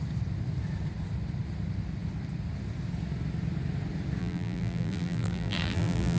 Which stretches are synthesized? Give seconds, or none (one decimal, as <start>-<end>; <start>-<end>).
4.2-6.2